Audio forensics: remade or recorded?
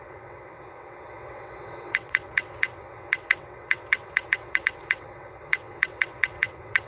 remade